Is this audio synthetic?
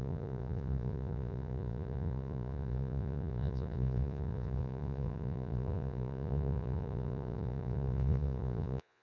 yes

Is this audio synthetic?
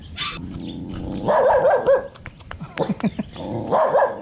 no